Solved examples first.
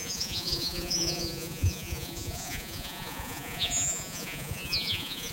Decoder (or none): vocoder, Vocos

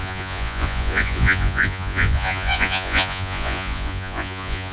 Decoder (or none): vocoder, Vocos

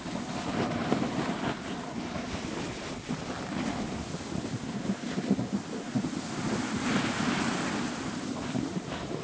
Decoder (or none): none